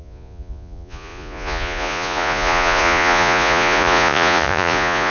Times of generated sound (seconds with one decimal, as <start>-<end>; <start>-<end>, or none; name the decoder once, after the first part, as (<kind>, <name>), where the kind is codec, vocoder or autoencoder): 0.0-5.1 (vocoder, Vocos)